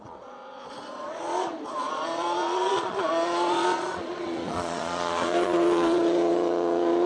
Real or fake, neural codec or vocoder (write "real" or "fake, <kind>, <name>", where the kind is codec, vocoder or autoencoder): fake, vocoder, Vocos